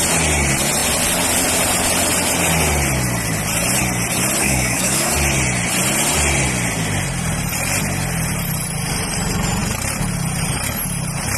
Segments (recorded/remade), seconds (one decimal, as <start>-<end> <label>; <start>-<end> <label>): 0.0-4.4 recorded; 4.4-5.1 remade; 5.1-11.4 recorded